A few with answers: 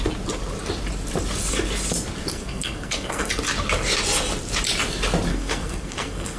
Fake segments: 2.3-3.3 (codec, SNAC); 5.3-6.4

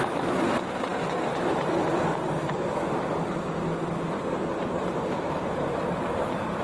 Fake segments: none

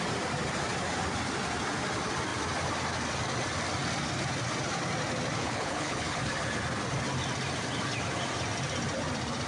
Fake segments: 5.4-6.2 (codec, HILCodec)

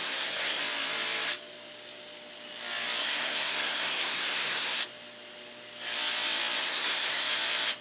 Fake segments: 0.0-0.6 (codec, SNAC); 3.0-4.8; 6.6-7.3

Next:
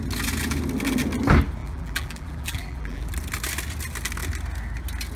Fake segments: 1.6-3.1 (vocoder, BigVGAN v2)

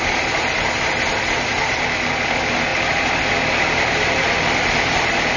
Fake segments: none

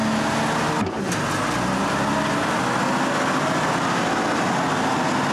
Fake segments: none